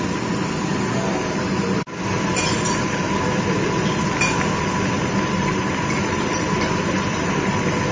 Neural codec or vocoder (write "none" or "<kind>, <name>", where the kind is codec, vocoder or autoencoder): none